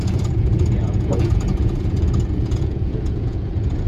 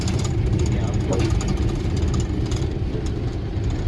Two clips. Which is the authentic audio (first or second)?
second